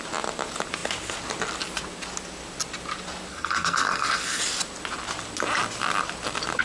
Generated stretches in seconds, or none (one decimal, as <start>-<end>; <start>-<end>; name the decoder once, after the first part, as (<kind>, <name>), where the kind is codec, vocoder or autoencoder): 3.3-4.4 (codec, SNAC)